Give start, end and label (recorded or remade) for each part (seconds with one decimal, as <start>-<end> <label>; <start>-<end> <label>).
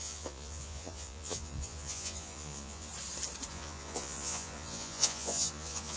0.0-2.9 remade; 2.9-3.5 recorded; 3.5-6.0 remade